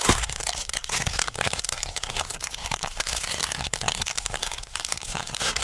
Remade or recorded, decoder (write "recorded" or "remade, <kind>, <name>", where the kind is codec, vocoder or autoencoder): remade, codec, SNAC